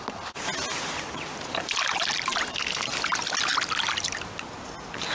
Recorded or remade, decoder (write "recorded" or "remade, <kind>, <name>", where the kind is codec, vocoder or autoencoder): recorded